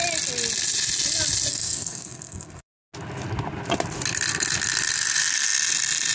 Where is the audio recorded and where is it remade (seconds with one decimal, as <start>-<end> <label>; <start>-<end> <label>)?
0.0-1.5 recorded; 1.5-2.7 remade; 2.7-6.1 recorded